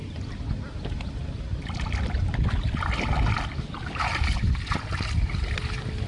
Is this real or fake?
real